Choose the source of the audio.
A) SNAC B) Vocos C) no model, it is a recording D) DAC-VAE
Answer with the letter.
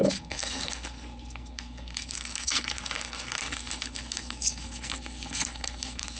A